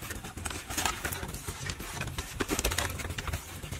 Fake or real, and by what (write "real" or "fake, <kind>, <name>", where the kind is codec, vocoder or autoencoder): fake, vocoder, BigVGAN v2